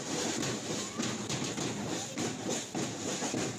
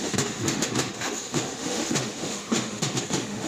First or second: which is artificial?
second